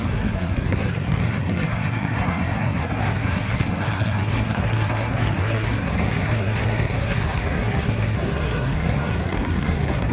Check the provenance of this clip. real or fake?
fake